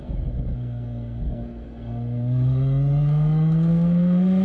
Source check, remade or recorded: remade